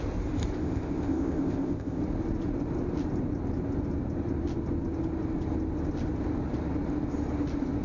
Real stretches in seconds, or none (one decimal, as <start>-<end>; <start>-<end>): 0.0-0.6; 2.0-7.8